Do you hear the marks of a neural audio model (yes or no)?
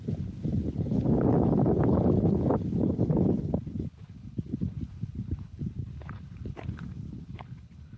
yes